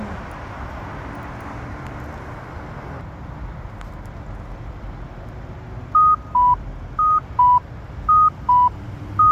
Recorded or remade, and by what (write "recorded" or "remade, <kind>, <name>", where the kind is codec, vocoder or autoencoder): recorded